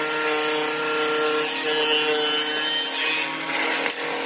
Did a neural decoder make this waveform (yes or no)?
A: no